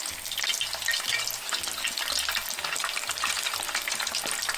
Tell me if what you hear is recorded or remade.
recorded